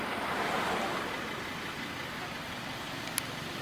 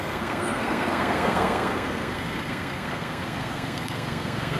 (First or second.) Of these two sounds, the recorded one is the first